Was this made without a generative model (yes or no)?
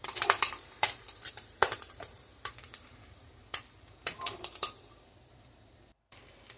no